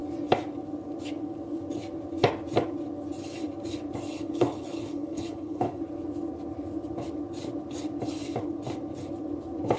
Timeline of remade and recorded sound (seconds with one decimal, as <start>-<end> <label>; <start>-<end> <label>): 0.0-4.1 recorded; 4.1-5.8 remade; 5.8-9.8 recorded

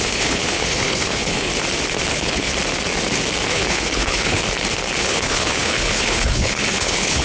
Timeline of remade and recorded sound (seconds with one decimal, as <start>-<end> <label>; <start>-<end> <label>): 0.0-1.5 remade; 1.5-2.1 recorded; 2.1-2.5 remade; 2.5-3.5 recorded; 3.5-4.4 remade; 4.4-5.0 recorded; 5.0-7.2 remade

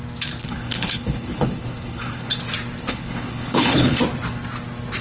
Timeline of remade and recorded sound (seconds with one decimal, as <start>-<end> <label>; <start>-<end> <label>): 0.0-0.4 recorded; 0.4-2.3 remade; 2.3-2.8 recorded; 2.8-4.0 remade; 4.0-5.0 recorded

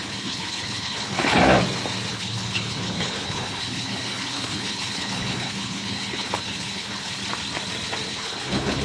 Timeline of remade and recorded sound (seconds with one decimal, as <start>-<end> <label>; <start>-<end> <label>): 0.0-1.4 remade; 1.4-2.1 recorded; 2.1-7.2 remade; 7.2-8.1 recorded; 8.1-8.8 remade